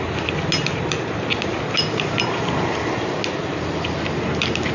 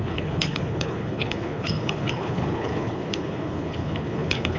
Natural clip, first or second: first